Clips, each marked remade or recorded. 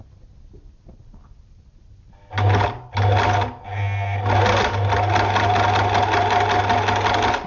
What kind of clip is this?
recorded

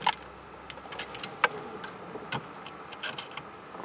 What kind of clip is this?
recorded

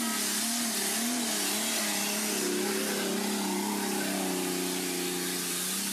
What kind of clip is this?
recorded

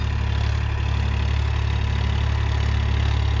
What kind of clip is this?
recorded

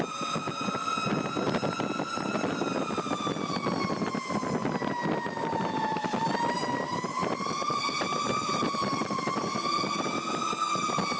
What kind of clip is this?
recorded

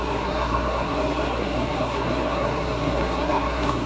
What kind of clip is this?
remade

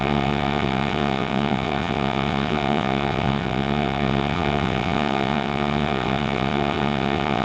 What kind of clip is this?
remade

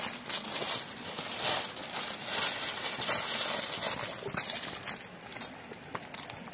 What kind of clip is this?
recorded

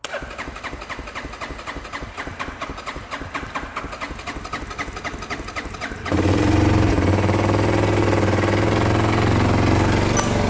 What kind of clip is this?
recorded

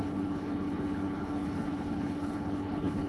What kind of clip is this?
remade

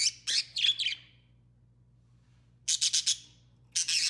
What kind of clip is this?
recorded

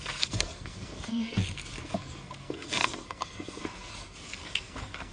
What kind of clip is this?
remade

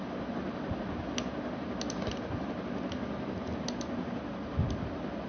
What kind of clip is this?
recorded